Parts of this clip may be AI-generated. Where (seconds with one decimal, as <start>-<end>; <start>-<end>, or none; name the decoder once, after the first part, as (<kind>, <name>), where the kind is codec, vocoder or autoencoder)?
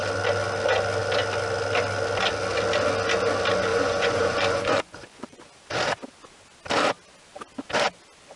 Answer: 3.7-5.4 (vocoder, Vocos)